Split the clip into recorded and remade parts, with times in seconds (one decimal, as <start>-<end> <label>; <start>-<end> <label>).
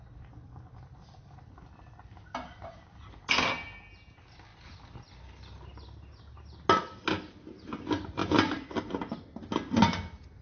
0.0-10.4 recorded